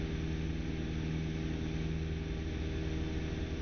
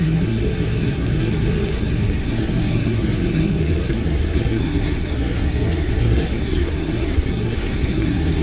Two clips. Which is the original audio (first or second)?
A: first